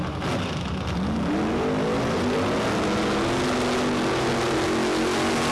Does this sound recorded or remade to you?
recorded